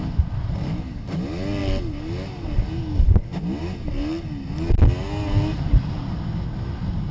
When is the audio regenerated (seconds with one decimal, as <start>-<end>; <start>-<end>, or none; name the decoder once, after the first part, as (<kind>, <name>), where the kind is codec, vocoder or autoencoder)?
none